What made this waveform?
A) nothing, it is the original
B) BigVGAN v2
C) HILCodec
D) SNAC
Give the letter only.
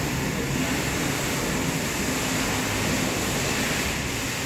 A